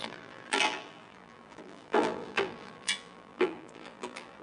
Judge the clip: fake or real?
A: fake